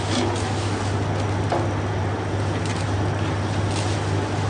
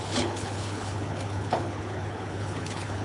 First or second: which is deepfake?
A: second